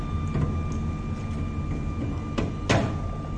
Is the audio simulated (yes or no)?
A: no